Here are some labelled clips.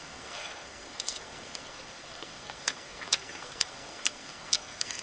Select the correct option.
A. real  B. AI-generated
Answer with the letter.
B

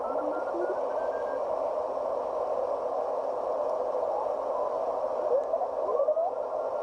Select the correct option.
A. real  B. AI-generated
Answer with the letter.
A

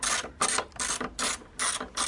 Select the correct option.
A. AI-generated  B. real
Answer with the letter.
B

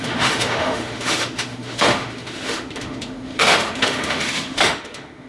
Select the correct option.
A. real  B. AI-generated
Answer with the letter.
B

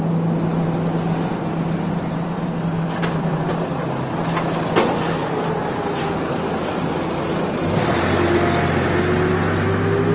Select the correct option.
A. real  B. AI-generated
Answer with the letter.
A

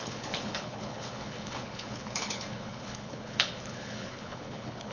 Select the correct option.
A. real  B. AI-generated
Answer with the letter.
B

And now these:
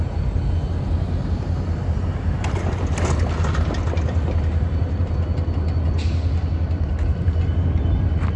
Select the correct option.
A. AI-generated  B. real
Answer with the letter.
B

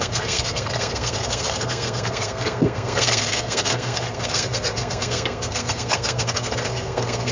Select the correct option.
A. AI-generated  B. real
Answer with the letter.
A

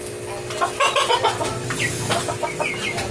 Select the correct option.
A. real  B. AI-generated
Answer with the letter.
A